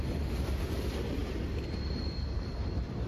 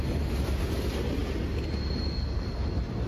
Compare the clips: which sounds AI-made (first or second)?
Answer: first